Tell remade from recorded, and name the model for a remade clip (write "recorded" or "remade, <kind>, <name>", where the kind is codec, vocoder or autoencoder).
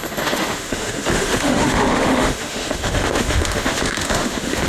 remade, autoencoder, DAC-VAE